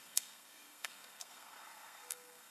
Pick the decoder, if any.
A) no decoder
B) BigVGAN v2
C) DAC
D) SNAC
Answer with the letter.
D